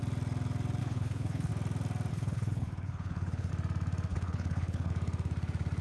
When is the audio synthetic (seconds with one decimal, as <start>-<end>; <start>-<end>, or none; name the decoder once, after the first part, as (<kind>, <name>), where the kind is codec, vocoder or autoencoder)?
0.8-1.5 (codec, HILCodec); 2.1-3.5; 4.1-4.9